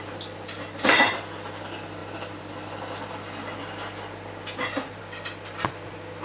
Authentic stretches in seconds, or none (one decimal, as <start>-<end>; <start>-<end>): 0.0-6.2